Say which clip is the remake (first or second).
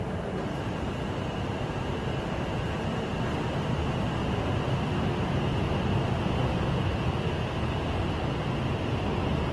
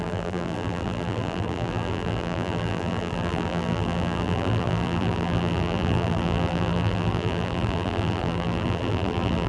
second